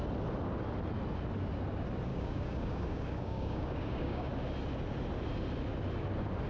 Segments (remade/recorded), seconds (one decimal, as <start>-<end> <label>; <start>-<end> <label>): 0.0-2.1 recorded; 2.1-4.3 remade; 4.3-6.5 recorded